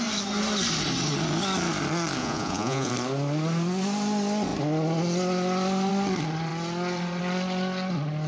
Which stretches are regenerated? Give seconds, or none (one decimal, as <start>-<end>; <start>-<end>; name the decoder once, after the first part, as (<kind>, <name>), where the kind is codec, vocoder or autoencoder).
2.2-2.9 (vocoder, Vocos)